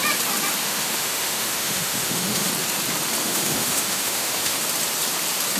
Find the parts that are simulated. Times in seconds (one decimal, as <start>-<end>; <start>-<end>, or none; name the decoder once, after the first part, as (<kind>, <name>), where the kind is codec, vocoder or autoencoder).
0.6-2.5 (autoencoder, DAC-VAE); 3.2-4.6